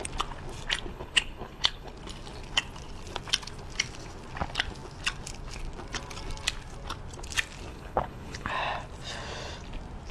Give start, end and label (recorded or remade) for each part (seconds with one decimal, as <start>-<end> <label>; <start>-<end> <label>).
0.0-0.9 recorded; 0.9-1.9 remade; 1.9-7.7 recorded; 7.7-8.5 remade; 8.5-10.1 recorded